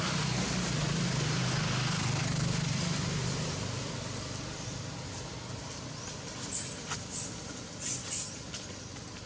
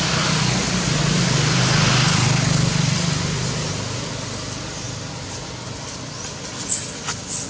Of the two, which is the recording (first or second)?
second